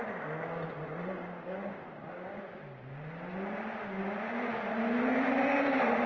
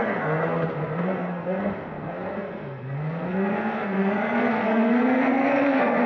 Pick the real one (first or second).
first